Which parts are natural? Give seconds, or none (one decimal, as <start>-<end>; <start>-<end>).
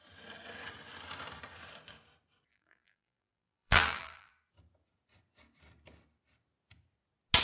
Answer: 0.0-2.5; 4.3-7.4